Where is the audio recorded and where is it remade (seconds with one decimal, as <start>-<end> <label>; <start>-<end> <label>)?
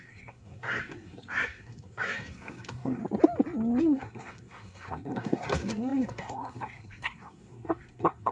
0.0-3.0 remade; 3.0-3.8 recorded; 3.8-8.3 remade